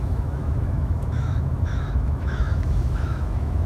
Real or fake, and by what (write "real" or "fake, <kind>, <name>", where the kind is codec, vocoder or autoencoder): fake, autoencoder, DAC-VAE